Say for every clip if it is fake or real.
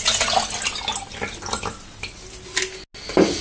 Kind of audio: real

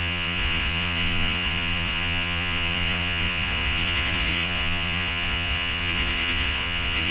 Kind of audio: fake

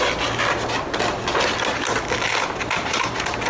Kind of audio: real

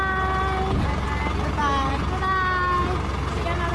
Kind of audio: real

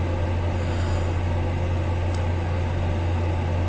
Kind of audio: real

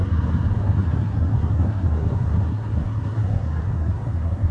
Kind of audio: fake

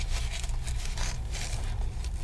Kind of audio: real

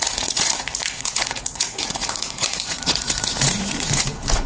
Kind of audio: fake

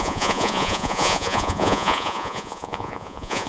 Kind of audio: fake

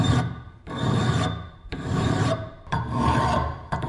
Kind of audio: fake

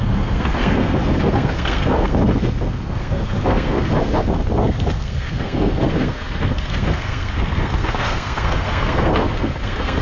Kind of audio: fake